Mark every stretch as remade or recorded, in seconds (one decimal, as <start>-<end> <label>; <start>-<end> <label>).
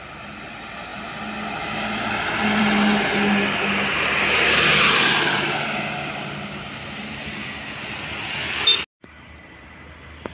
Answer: 0.0-10.3 recorded